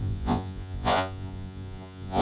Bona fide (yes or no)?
no